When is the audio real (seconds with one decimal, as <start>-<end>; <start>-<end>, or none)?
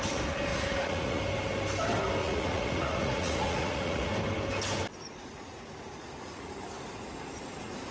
0.0-0.5; 1.2-2.2; 4.1-5.2; 6.5-7.9